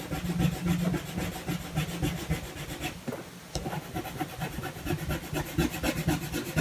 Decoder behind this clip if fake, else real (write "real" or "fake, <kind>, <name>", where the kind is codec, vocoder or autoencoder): real